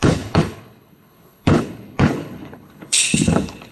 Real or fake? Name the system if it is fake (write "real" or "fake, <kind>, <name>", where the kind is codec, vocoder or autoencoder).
fake, codec, HILCodec